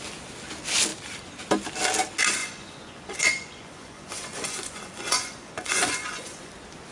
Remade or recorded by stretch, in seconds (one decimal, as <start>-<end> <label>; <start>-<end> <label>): 0.0-2.4 recorded; 2.4-6.5 remade; 6.5-6.9 recorded